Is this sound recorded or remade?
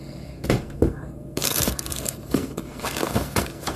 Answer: remade